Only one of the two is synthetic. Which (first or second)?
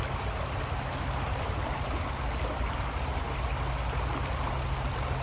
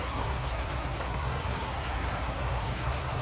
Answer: second